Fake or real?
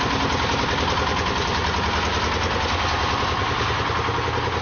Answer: real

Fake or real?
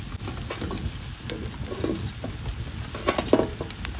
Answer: real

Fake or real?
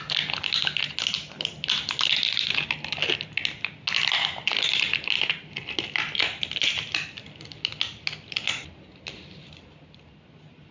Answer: real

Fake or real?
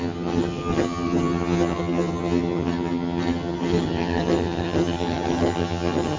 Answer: fake